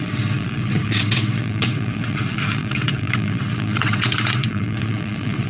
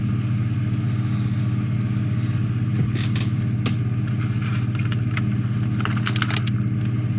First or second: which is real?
second